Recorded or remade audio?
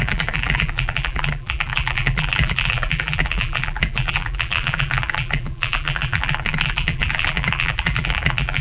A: remade